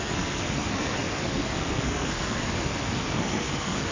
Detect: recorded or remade remade